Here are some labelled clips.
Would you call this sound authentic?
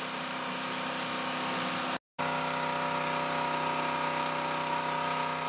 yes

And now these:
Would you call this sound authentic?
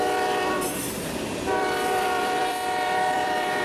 no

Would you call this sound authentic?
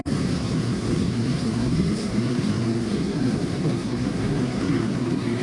no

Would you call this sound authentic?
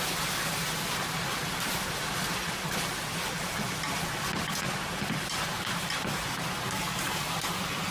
yes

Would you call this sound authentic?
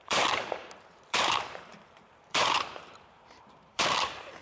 no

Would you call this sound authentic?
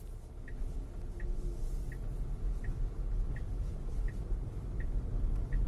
yes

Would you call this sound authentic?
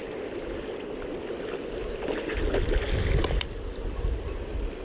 yes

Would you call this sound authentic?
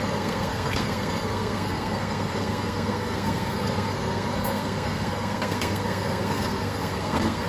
no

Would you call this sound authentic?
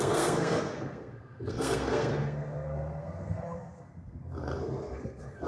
no